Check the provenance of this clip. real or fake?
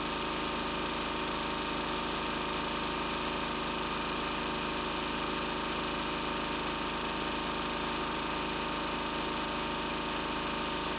real